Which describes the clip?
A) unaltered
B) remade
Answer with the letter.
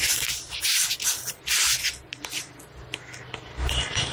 A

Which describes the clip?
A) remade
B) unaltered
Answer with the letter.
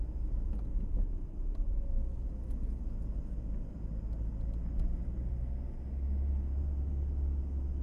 B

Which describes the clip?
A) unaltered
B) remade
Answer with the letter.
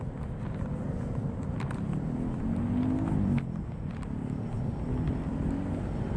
A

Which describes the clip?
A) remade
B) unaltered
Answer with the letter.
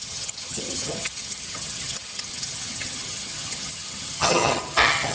A